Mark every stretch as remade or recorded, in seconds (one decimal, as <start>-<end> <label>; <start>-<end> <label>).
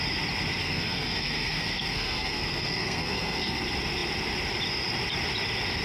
0.0-0.6 recorded; 0.6-3.6 remade; 3.6-5.8 recorded